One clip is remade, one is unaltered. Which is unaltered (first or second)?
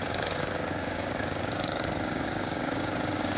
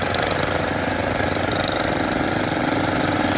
second